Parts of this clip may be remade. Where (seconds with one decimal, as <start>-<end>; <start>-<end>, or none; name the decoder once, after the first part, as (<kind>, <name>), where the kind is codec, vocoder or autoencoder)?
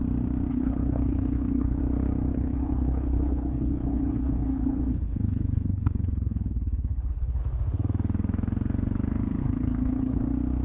0.5-1.8 (codec, HILCodec); 2.3-7.4; 9.4-10.2